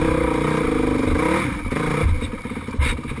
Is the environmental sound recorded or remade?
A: recorded